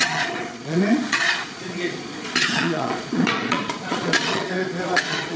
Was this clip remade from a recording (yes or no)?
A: yes